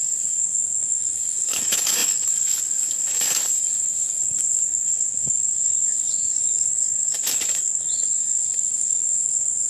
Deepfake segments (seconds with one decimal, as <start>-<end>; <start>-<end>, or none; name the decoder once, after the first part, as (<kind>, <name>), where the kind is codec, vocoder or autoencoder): 0.0-9.7 (codec, DAC)

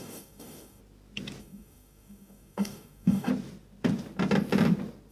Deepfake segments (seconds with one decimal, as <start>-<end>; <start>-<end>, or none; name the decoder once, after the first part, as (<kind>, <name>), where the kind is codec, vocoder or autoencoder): 0.0-0.8 (codec, DAC); 1.4-3.3

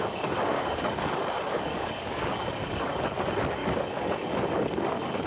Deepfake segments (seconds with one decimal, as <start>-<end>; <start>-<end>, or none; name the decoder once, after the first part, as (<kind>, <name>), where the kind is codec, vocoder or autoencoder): 0.0-3.2 (codec, DAC); 3.6-4.3